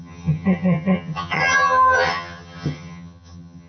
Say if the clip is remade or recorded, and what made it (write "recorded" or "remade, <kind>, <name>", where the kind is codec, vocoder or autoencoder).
remade, vocoder, HiFi-GAN